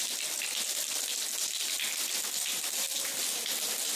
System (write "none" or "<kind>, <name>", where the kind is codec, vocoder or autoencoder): none